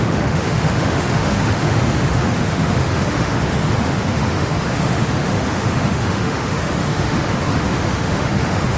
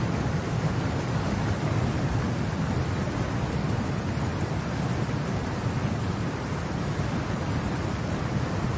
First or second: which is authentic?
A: second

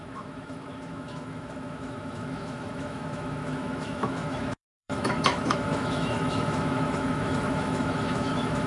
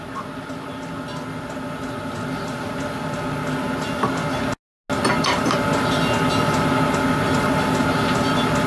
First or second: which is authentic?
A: second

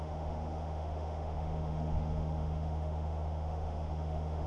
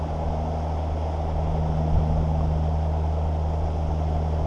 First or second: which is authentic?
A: second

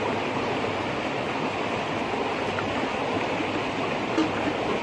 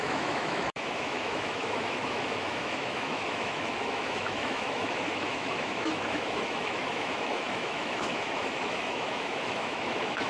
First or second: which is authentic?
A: first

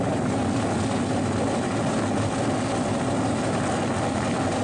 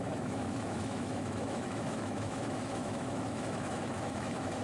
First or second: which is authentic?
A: first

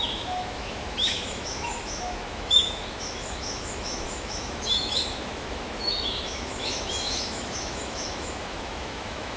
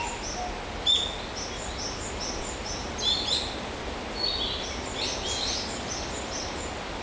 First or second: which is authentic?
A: second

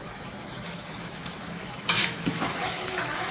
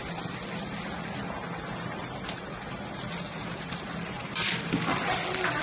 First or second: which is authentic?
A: second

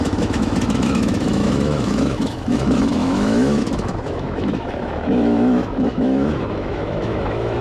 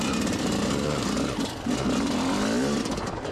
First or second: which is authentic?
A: second